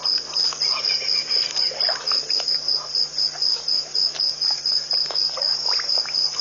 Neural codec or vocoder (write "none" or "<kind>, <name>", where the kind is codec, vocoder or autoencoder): none